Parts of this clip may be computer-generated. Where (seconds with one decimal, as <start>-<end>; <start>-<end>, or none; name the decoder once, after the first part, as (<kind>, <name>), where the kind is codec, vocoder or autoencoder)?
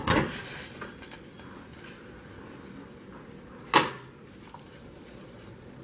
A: 0.0-0.9 (vocoder, BigVGAN v2); 4.1-5.8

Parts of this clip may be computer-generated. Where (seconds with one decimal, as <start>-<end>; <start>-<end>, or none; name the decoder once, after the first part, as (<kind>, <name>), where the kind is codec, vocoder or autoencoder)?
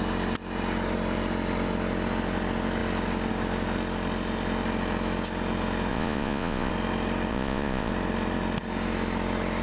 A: 5.9-6.7 (vocoder, Vocos); 7.3-7.9